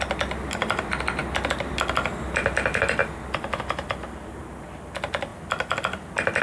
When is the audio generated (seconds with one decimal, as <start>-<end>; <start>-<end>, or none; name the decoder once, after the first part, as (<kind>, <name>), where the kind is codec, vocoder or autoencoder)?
0.0-1.2 (vocoder, BigVGAN v2); 1.7-5.3